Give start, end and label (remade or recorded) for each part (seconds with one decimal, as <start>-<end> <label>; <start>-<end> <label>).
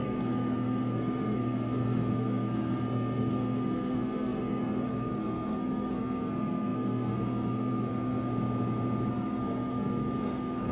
0.0-8.3 remade; 8.3-9.1 recorded; 9.1-10.7 remade